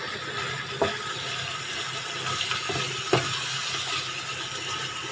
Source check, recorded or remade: recorded